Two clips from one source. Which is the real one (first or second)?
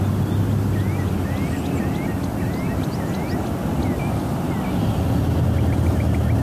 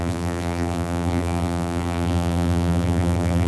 first